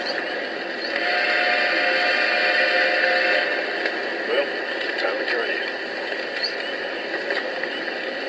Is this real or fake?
real